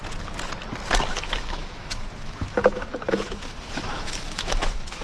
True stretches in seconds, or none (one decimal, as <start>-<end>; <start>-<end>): 0.0-1.1